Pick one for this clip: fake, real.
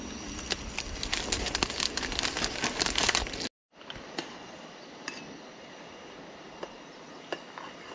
real